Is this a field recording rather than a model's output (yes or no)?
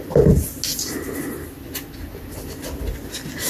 yes